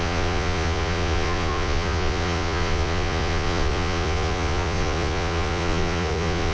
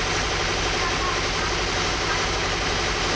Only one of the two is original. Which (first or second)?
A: second